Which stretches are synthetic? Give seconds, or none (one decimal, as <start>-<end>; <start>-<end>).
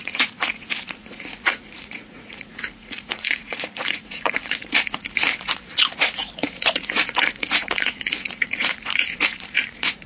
0.0-10.1